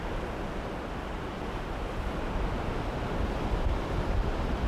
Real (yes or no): yes